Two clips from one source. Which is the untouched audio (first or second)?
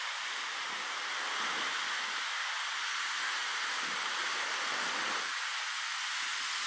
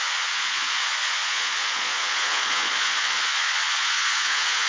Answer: first